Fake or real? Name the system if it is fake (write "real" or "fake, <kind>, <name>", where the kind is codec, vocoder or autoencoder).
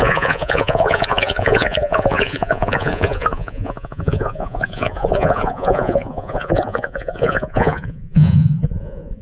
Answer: fake, vocoder, Vocos